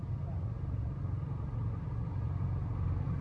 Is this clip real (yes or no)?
yes